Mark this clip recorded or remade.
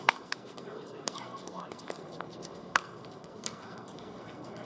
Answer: remade